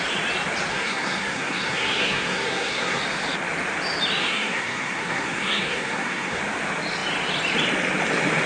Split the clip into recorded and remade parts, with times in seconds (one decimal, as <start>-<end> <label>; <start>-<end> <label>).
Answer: 0.0-0.7 recorded; 0.7-3.0 remade; 3.0-4.2 recorded; 4.2-6.4 remade; 6.4-8.5 recorded